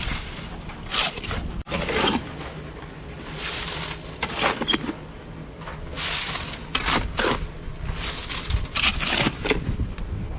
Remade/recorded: recorded